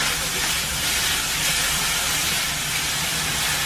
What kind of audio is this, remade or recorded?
recorded